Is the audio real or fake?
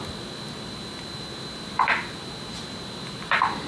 real